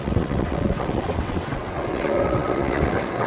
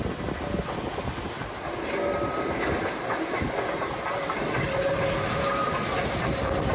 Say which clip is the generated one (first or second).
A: first